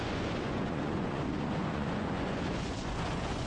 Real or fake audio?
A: fake